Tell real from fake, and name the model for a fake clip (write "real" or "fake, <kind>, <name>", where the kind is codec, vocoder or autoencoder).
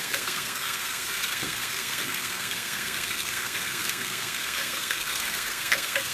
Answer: fake, codec, SNAC